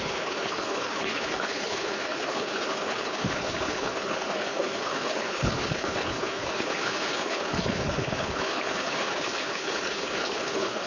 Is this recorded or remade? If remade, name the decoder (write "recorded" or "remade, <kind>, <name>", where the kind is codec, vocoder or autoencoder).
remade, codec, HILCodec